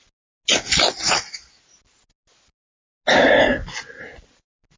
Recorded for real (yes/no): yes